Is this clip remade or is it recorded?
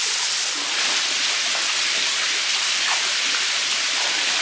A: recorded